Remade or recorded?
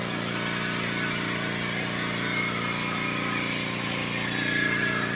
recorded